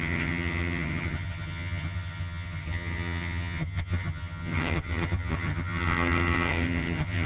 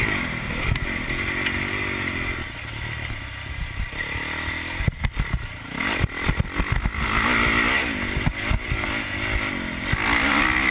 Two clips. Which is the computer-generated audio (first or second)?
first